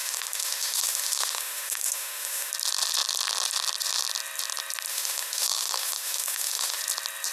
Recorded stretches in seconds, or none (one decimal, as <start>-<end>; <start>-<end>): 2.5-4.9; 6.8-7.3